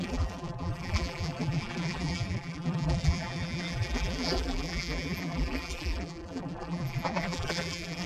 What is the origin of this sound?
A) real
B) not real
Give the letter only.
B